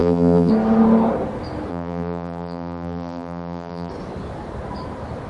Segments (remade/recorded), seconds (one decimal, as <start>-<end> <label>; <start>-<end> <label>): 0.0-0.5 remade; 0.5-1.7 recorded; 1.7-3.9 remade; 3.9-5.3 recorded